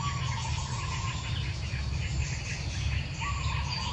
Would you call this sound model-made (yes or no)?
no